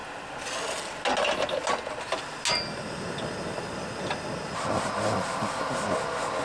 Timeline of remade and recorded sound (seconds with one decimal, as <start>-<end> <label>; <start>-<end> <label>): 0.0-6.4 recorded